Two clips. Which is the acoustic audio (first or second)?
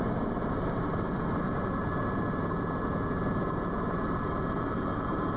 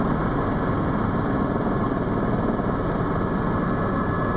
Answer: second